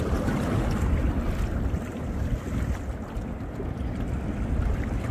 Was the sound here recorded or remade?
recorded